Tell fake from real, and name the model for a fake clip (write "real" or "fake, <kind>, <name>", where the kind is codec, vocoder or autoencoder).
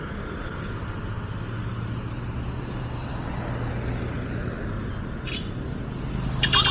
real